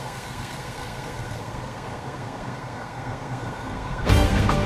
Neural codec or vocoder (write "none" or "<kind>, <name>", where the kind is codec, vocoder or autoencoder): codec, SNAC